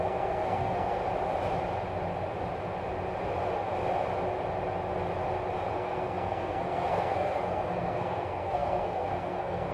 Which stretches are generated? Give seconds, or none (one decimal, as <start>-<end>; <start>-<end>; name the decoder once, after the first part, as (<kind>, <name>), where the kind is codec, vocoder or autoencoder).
0.0-1.0 (codec, SNAC); 5.7-9.7